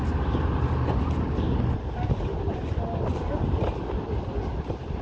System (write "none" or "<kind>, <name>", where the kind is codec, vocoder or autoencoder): none